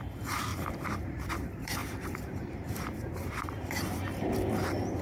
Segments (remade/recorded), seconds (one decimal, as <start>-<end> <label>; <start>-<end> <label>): 0.0-5.0 remade

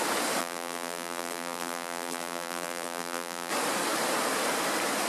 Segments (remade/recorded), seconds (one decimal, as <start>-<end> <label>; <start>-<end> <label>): 0.0-0.4 recorded; 0.4-3.5 remade; 3.5-5.1 recorded

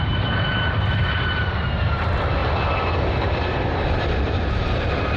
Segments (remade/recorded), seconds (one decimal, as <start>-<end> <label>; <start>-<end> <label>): 0.0-2.4 remade; 2.4-3.4 recorded; 3.4-5.2 remade

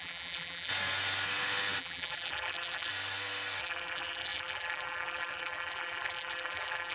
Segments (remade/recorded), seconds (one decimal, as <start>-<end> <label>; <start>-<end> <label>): 0.0-0.7 remade; 0.7-1.8 recorded; 1.8-2.9 remade; 2.9-3.6 recorded; 3.6-6.9 remade

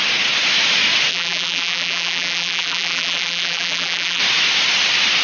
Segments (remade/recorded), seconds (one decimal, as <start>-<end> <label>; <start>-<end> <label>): 0.0-1.1 recorded; 1.1-4.2 remade; 4.2-5.2 recorded